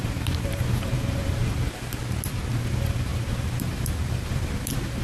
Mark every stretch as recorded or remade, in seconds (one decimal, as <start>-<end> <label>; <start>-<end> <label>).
0.0-2.0 remade; 2.0-2.5 recorded; 2.5-5.0 remade